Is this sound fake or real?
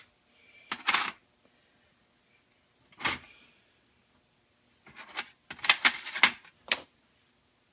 real